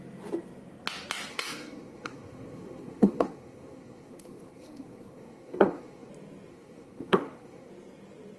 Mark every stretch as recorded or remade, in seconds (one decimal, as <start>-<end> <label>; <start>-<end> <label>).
0.0-1.3 recorded; 1.3-6.1 remade; 6.1-6.5 recorded; 6.5-7.7 remade; 7.7-8.4 recorded